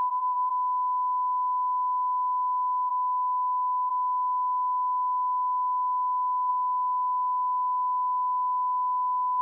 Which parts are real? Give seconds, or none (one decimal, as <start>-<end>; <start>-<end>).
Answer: 0.5-9.4